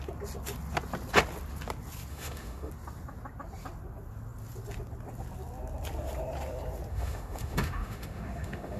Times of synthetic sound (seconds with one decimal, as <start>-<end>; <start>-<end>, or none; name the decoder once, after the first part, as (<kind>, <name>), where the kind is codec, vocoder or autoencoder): 2.1-2.7 (autoencoder, DAC-VAE); 6.9-8.8